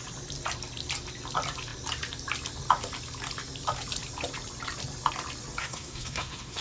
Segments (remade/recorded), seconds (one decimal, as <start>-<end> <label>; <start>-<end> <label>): 0.0-5.6 recorded; 5.6-6.6 remade